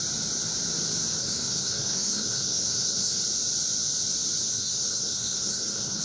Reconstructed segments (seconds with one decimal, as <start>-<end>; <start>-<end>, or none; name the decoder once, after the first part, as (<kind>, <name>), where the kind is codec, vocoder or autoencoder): 1.2-3.2 (codec, SNAC); 4.5-6.0